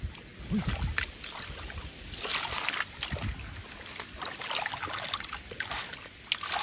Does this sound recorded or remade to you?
recorded